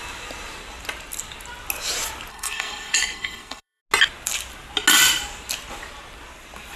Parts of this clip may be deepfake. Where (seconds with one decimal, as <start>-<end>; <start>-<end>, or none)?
2.3-3.8